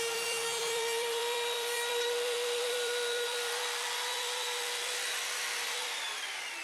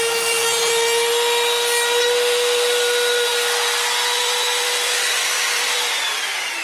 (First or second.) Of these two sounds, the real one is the second